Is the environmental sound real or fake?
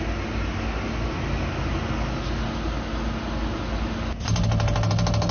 real